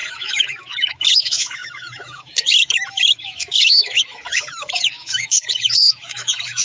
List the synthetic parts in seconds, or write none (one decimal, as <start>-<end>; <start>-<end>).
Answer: 0.0-6.6